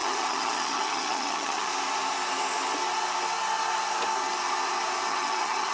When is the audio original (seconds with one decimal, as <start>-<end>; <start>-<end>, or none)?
1.7-5.1